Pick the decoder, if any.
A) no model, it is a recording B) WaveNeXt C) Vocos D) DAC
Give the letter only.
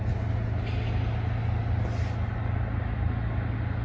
A